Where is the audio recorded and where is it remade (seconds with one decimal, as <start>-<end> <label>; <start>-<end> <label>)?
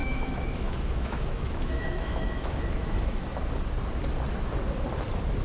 0.0-3.2 remade; 3.2-5.4 recorded